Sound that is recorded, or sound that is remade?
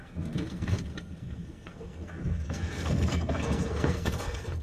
remade